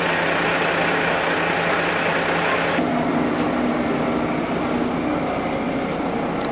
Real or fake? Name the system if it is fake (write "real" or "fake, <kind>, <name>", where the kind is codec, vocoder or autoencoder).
real